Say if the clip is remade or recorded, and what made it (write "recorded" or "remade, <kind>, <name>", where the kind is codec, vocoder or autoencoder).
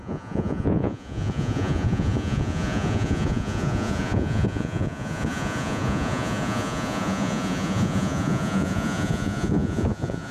remade, vocoder, Vocos